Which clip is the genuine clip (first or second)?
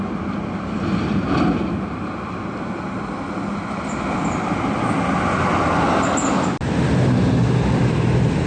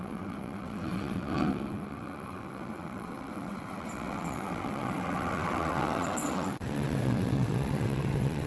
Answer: first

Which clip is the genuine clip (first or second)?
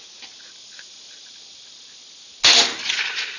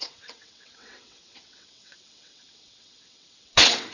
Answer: first